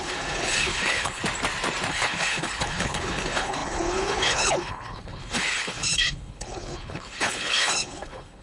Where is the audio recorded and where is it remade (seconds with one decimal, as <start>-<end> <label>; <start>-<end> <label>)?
0.0-1.2 remade; 1.2-1.9 recorded; 1.9-8.4 remade